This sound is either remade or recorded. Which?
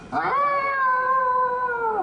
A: recorded